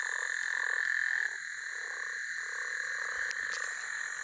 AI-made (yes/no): no